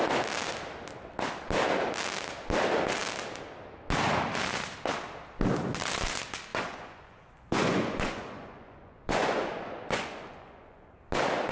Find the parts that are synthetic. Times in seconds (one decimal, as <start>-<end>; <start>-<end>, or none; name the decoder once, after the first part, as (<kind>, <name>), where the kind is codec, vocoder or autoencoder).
6.5-10.9 (vocoder, Vocos)